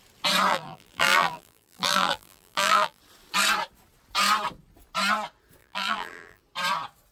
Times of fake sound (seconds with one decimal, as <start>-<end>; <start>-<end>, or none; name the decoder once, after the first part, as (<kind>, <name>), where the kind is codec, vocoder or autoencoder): 0.5-3.0 (vocoder, BigVGAN v2); 5.6-6.4